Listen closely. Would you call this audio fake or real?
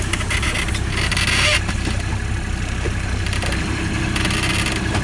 real